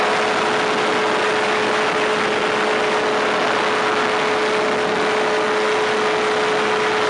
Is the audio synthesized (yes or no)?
no